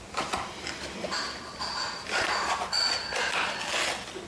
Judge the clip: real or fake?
real